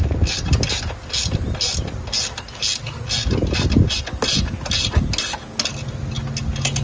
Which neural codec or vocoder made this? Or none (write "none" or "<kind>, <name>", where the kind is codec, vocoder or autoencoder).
none